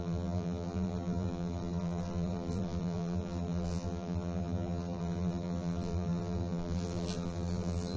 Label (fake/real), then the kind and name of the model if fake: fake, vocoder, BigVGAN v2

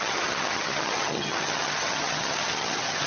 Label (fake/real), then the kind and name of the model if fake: fake, vocoder, HiFi-GAN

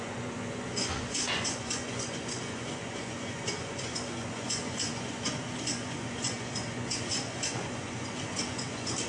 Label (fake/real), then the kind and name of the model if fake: fake, vocoder, Vocos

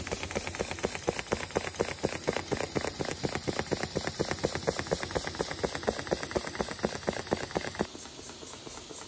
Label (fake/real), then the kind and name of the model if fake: real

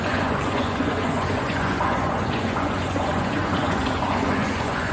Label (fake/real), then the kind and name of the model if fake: fake, vocoder, Vocos